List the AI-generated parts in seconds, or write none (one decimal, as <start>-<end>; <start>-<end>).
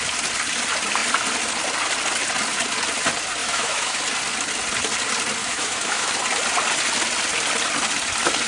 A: 3.4-4.0; 5.4-6.2